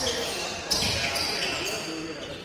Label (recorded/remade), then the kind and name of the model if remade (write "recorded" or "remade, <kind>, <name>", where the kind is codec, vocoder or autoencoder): recorded